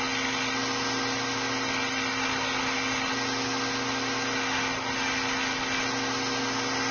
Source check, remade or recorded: recorded